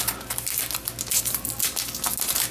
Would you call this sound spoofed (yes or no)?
no